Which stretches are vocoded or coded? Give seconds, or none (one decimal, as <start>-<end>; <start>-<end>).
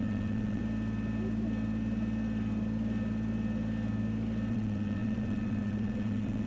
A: 0.0-0.6; 4.5-6.5